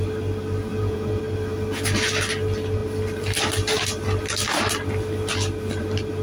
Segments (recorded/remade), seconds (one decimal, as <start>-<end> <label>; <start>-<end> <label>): 0.0-0.7 recorded; 0.7-1.2 remade; 1.2-6.2 recorded